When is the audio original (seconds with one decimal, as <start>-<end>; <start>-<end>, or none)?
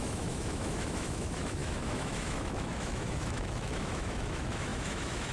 none